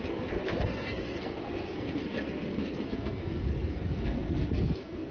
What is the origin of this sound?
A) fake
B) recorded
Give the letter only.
A